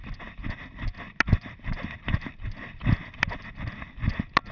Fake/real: real